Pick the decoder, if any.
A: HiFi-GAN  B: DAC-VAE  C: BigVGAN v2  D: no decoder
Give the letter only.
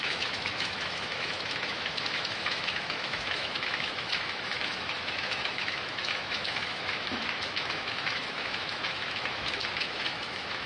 B